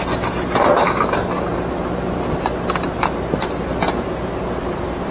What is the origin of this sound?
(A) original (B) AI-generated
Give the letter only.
A